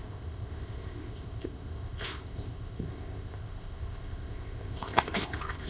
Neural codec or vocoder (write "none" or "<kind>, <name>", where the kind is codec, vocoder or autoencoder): codec, ZipCodec